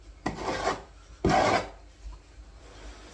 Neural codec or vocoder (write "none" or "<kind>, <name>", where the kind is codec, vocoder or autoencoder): none